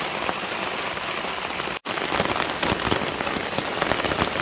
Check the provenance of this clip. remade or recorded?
recorded